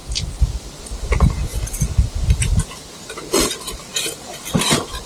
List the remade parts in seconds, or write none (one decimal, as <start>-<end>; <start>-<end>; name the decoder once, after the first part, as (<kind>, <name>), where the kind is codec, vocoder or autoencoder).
0.8-5.1 (vocoder, BigVGAN v2)

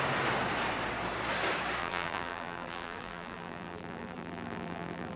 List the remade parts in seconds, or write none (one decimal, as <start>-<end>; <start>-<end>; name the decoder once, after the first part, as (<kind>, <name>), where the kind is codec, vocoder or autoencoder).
1.8-5.2 (vocoder, BigVGAN v2)

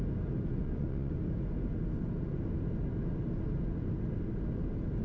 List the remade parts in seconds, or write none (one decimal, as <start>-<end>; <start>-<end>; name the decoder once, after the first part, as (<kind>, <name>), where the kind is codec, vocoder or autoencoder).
0.5-1.1 (vocoder, Vocos)

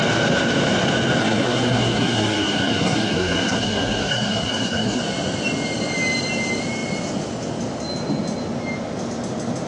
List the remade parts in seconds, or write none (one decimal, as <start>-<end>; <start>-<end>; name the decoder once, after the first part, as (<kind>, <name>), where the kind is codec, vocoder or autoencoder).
1.2-5.0 (codec, SNAC)